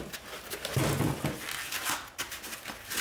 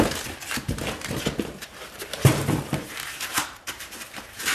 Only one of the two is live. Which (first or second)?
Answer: first